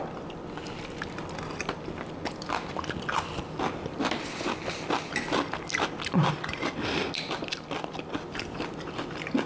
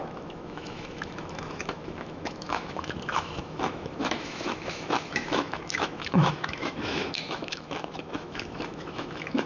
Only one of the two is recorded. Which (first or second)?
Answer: first